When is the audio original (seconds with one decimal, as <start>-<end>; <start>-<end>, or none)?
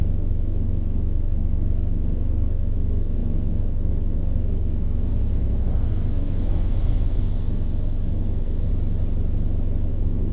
8.7-9.9